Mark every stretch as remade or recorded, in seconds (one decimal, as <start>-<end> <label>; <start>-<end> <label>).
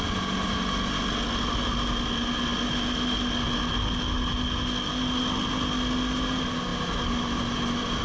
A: 0.0-8.0 recorded